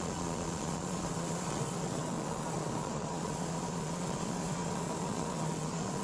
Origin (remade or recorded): remade